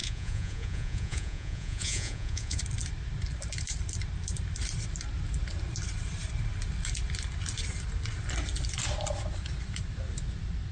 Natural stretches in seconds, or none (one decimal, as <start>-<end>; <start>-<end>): 2.6-10.7

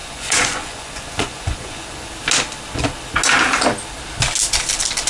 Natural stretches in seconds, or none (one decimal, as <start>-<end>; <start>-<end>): 2.1-5.1

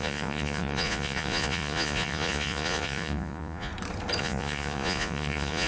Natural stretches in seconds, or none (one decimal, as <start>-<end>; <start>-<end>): 3.7-4.2

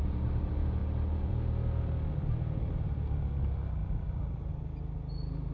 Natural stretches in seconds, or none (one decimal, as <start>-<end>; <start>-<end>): 0.0-5.5

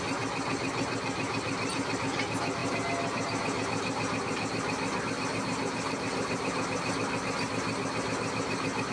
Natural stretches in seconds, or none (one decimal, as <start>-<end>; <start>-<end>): 0.0-8.9

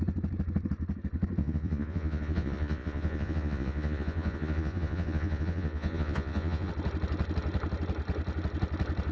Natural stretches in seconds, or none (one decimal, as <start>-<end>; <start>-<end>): 0.0-1.4; 6.7-9.1

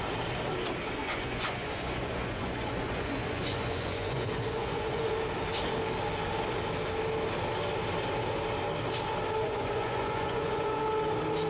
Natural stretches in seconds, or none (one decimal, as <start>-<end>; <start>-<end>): 0.0-1.0; 5.1-9.4; 10.8-11.5

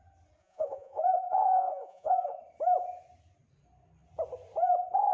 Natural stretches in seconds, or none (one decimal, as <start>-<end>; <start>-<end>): 0.0-0.4; 2.4-5.1